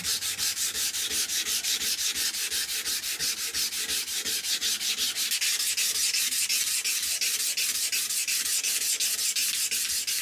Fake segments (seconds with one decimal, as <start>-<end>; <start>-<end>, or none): 0.0-4.6; 7.8-9.4